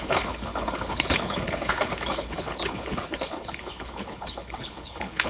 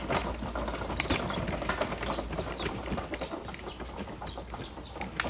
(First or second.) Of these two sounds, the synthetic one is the first